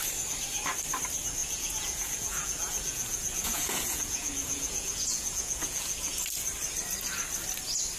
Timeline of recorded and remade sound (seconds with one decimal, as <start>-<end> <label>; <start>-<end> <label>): 0.0-1.4 recorded; 1.4-6.2 remade; 6.2-8.0 recorded